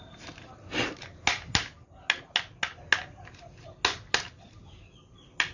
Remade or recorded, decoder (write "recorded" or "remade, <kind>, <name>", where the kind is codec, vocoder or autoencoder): recorded